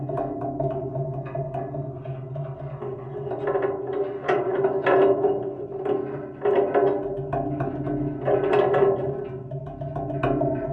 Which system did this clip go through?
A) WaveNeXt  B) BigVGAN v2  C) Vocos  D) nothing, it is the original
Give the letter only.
D